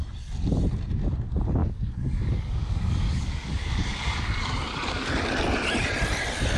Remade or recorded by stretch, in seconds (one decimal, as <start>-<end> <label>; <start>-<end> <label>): 0.0-1.6 recorded; 1.6-5.1 remade; 5.1-6.6 recorded